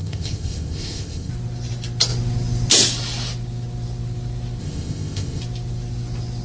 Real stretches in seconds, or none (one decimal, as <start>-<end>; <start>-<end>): 1.3-4.6; 5.4-6.4